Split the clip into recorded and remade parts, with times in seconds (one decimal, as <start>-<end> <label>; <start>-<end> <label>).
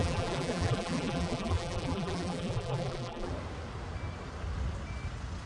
0.0-3.3 remade; 3.3-5.5 recorded